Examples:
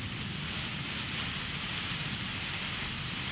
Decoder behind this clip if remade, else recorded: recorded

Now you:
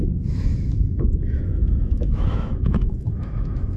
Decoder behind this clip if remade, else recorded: remade, autoencoder, DAC-VAE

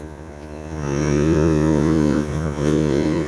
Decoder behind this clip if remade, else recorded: remade, vocoder, Vocos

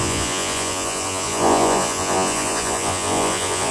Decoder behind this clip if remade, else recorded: remade, vocoder, Vocos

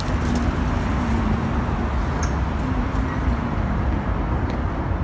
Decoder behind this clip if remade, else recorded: recorded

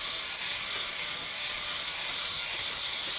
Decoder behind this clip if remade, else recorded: recorded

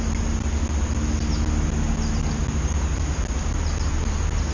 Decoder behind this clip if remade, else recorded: recorded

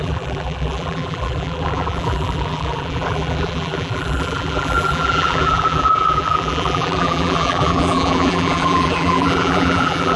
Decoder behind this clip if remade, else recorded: remade, vocoder, BigVGAN v2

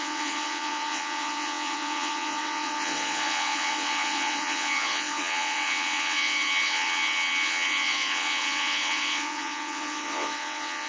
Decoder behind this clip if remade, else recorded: remade, vocoder, WaveNeXt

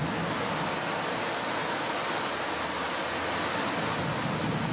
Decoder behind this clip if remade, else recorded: recorded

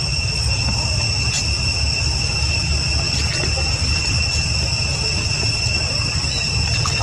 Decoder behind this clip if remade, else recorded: recorded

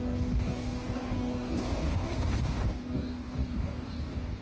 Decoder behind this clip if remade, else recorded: remade, codec, DAC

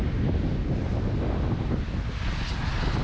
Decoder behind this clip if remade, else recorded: recorded